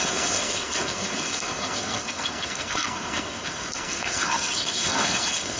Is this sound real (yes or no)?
no